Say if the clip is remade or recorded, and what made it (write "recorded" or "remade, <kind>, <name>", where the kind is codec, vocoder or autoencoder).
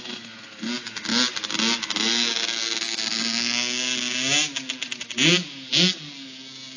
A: recorded